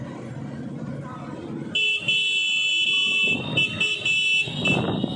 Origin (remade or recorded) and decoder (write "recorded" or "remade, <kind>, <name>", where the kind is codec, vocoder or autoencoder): recorded